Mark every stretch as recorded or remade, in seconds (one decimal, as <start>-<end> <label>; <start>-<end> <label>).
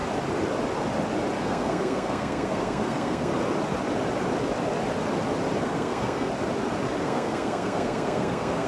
0.0-1.4 recorded; 1.4-3.3 remade; 3.3-5.6 recorded; 5.6-6.3 remade; 6.3-7.0 recorded; 7.0-8.7 remade